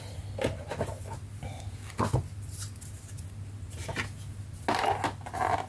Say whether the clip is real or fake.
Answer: real